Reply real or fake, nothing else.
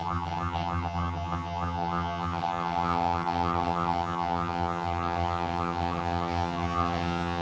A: fake